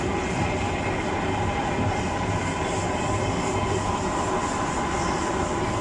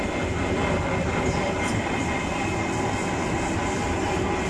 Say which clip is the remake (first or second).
first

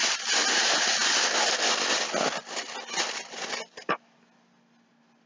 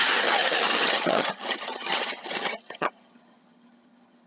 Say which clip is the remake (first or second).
second